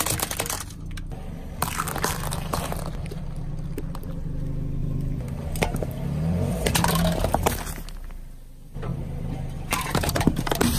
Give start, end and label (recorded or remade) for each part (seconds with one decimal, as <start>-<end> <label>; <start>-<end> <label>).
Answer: 0.0-1.6 recorded; 1.6-2.8 remade; 2.8-4.8 recorded; 4.8-7.6 remade; 7.6-8.9 recorded; 8.9-10.8 remade